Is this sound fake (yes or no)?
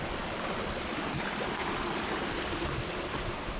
no